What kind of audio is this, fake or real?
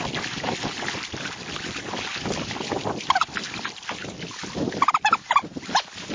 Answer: real